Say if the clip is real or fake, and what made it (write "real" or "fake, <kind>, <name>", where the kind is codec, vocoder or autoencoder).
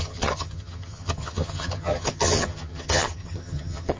fake, vocoder, HiFi-GAN